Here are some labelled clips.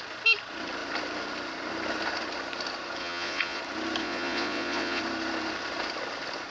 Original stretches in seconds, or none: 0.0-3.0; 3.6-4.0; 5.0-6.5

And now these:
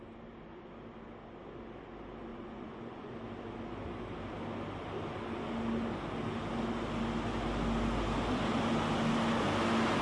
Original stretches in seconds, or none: 0.0-2.3; 3.1-10.0

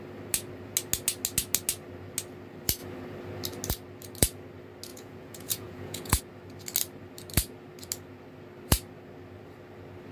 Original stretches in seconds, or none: 0.0-4.9; 6.2-10.1

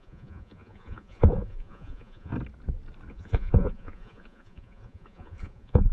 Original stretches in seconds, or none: 2.3-3.1

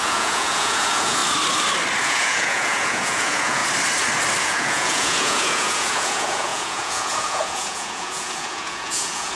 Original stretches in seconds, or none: 1.2-2.0; 3.6-4.4

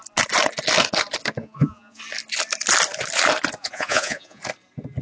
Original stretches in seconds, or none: 0.0-1.4; 2.0-3.6; 4.4-5.0